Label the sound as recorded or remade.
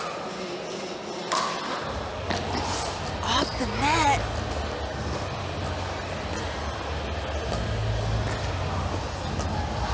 recorded